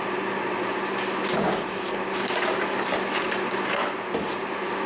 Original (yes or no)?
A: yes